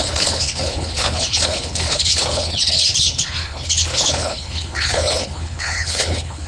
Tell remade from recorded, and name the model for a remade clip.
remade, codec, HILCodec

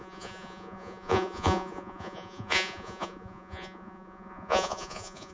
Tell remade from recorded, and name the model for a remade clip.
remade, vocoder, Vocos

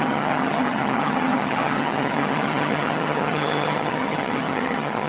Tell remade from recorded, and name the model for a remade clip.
remade, vocoder, HiFi-GAN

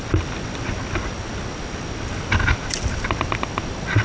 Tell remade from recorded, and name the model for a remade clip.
recorded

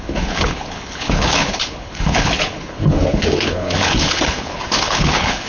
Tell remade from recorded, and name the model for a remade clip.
remade, codec, HILCodec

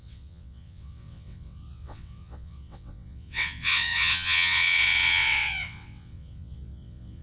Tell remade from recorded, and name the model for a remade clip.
remade, vocoder, WaveNeXt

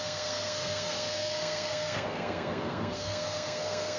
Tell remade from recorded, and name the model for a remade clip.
remade, codec, SNAC